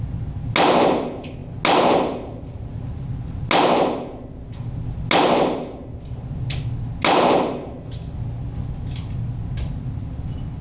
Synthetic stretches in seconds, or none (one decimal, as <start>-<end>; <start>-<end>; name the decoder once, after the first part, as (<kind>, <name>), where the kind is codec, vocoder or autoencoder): none